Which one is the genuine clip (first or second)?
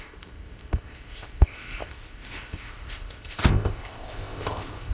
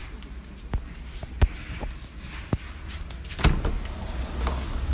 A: second